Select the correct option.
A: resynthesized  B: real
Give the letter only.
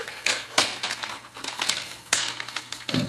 A